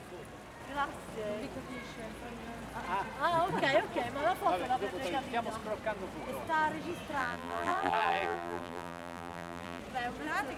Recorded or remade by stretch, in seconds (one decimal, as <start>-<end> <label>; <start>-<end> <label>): 0.0-7.2 recorded; 7.2-9.8 remade; 9.8-10.6 recorded